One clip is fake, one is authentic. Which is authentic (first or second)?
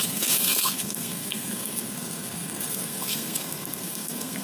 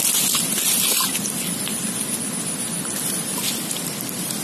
second